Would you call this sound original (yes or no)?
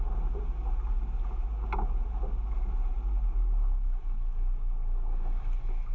yes